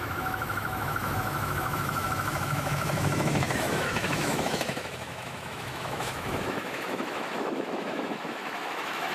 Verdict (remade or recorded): remade